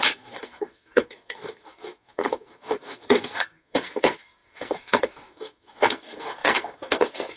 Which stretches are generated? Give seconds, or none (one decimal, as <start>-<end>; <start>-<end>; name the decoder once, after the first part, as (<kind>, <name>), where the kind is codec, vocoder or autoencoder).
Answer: 0.0-7.4 (codec, SNAC)